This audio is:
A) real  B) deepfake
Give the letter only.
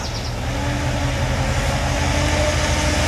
A